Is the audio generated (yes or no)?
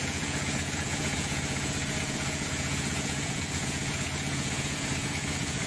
yes